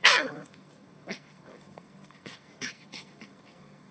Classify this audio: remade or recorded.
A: remade